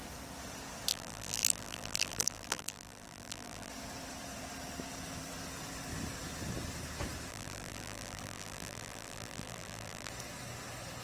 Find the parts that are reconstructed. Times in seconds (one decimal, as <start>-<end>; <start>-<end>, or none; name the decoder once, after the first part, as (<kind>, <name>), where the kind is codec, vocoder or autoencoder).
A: 0.9-3.7 (vocoder, BigVGAN v2); 7.3-10.1